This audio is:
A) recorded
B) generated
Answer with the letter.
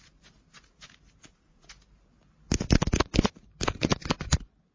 A